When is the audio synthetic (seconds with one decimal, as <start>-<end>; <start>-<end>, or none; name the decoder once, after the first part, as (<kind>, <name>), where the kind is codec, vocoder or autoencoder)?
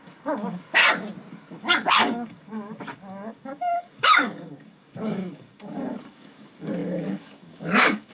0.0-0.8 (codec, DAC); 1.3-8.1